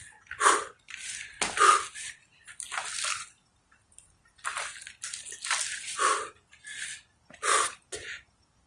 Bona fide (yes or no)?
yes